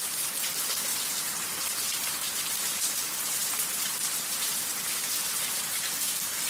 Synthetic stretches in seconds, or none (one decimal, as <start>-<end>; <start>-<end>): 0.9-1.5